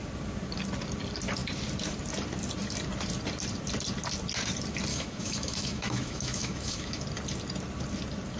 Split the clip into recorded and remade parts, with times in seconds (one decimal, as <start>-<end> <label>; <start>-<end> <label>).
0.0-4.9 recorded; 4.9-7.0 remade; 7.0-8.4 recorded